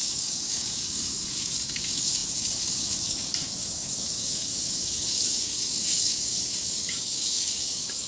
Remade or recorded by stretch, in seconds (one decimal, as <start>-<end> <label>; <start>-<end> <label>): 0.0-8.1 remade